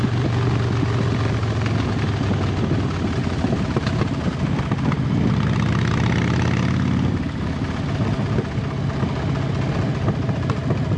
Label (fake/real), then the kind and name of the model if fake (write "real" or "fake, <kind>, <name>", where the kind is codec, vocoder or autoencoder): real